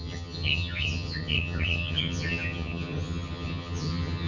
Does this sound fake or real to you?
fake